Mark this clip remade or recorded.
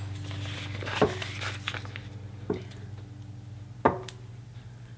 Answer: recorded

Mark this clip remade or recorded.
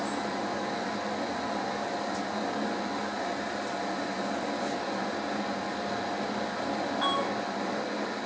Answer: recorded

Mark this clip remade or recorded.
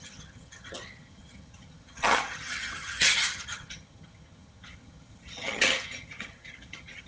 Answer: remade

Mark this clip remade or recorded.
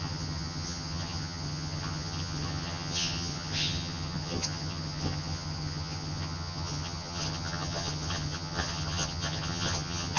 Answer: remade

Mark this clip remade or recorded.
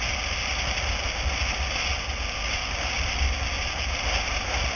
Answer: recorded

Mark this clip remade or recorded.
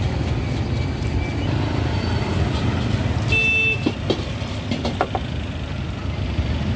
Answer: recorded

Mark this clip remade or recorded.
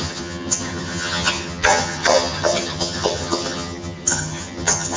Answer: remade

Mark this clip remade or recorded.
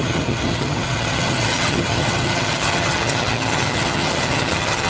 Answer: remade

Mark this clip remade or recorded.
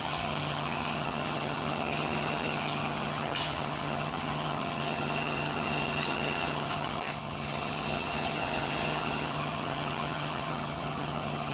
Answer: remade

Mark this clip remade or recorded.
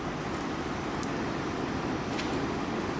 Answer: recorded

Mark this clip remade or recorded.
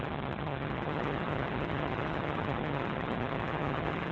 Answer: remade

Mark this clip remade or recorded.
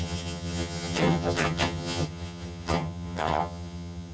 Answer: remade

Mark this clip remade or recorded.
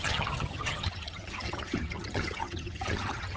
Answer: remade